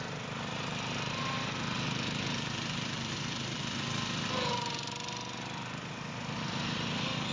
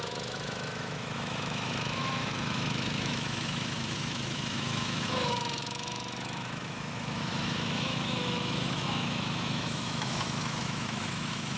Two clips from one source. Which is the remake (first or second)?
second